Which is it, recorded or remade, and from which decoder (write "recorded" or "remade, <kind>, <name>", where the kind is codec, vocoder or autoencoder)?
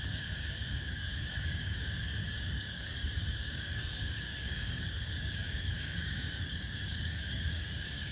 remade, codec, DAC